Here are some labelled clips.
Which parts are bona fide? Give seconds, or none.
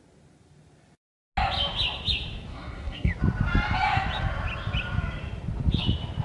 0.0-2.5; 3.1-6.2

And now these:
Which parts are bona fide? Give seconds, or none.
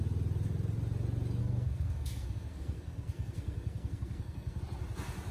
0.0-1.4; 4.6-5.3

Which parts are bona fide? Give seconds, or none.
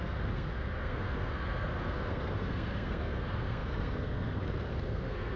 none